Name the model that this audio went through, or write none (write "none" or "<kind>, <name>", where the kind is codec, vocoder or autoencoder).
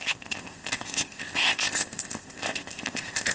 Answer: codec, ZipCodec